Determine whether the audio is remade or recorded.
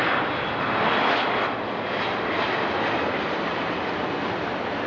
recorded